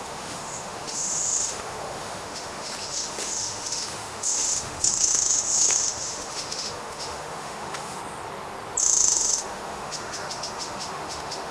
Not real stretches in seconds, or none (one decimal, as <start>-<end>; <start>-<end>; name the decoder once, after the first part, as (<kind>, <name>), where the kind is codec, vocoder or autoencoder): 0.0-8.0 (autoencoder, DAC-VAE); 8.8-11.5